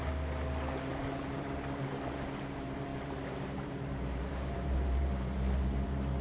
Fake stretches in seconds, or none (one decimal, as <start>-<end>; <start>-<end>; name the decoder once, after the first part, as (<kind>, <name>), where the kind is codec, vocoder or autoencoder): 0.9-6.2 (vocoder, BigVGAN v2)